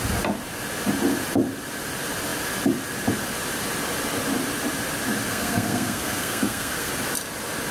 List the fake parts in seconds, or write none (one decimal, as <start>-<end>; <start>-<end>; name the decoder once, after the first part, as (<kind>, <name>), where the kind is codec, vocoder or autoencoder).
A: 5.3-6.9 (codec, SNAC)